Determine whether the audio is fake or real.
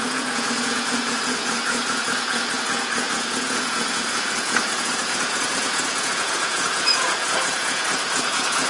fake